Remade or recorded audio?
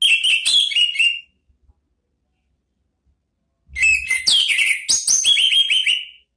recorded